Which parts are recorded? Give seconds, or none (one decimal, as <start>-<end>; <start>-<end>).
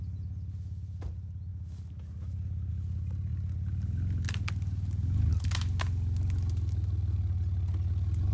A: 0.0-8.3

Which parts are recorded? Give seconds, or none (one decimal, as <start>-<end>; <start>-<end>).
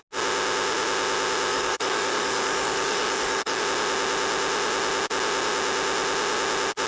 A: 0.0-1.5; 3.6-6.9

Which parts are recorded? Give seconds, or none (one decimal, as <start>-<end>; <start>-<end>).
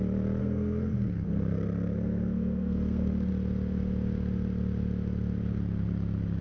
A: 0.0-0.4; 3.3-6.4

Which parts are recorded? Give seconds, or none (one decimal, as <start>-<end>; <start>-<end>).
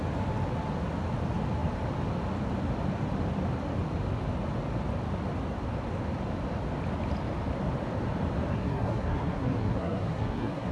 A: 0.0-8.5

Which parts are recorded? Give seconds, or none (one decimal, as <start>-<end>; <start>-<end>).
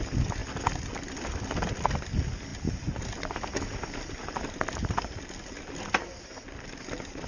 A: 0.0-7.3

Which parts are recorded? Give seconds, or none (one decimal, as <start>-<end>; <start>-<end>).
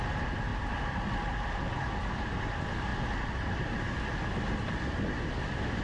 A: 0.0-5.8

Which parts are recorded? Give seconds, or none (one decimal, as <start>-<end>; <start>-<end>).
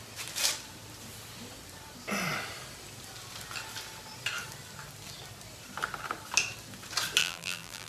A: 0.0-7.2